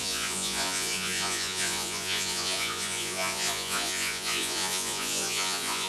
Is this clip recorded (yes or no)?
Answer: no